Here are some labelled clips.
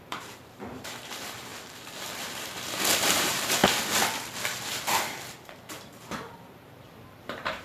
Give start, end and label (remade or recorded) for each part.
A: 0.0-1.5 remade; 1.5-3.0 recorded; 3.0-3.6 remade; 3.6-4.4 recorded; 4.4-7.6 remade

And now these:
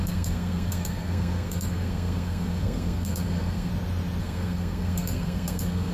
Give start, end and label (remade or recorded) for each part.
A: 0.0-3.7 remade; 3.7-4.2 recorded; 4.2-5.9 remade

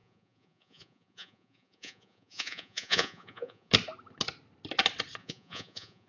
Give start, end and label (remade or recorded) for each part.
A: 0.0-3.7 remade; 3.7-5.2 recorded; 5.2-6.1 remade

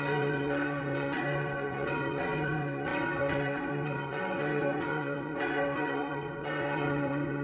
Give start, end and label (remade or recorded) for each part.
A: 0.0-7.4 remade

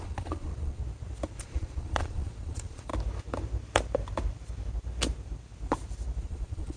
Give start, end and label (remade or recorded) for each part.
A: 0.0-0.8 remade; 0.8-1.4 recorded; 1.4-2.9 remade; 2.9-6.2 recorded; 6.2-6.8 remade

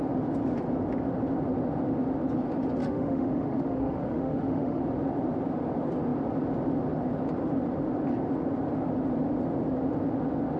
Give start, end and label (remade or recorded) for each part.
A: 0.0-2.8 recorded; 2.8-4.8 remade; 4.8-10.6 recorded

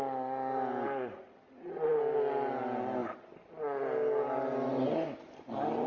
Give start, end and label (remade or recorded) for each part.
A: 0.0-5.9 recorded